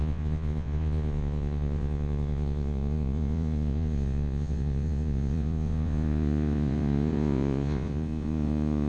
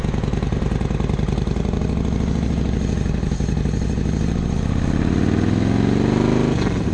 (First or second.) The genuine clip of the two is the second